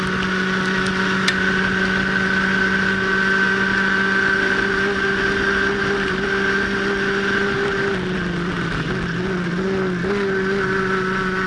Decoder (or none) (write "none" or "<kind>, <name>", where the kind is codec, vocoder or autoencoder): none